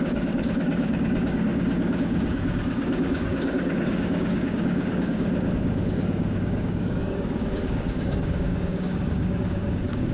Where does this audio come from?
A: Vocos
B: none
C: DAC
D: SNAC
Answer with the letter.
C